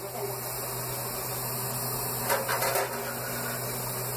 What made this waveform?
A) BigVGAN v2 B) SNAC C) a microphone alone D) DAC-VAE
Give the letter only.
C